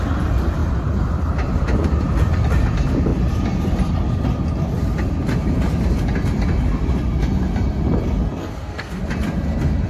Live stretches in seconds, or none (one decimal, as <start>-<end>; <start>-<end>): 0.0-8.4; 9.0-9.9